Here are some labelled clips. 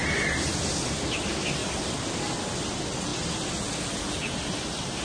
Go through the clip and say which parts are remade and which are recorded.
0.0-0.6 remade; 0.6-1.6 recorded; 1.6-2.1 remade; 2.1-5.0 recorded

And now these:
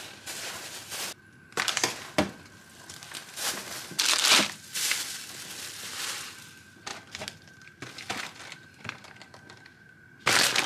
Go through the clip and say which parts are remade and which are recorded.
0.0-10.7 recorded

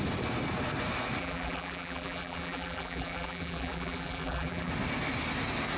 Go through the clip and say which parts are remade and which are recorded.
0.0-1.2 recorded; 1.2-4.7 remade; 4.7-5.8 recorded

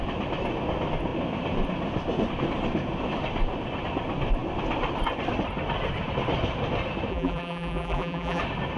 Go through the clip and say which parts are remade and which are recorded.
0.0-7.1 recorded; 7.1-8.4 remade; 8.4-8.8 recorded